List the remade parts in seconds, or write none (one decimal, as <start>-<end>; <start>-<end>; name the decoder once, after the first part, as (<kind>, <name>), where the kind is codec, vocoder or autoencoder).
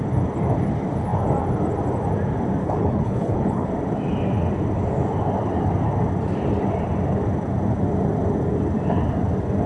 2.6-3.7 (codec, HILCodec)